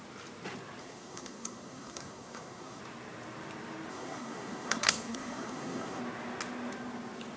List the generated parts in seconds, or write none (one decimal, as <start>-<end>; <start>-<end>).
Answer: 0.8-2.8; 3.9-6.0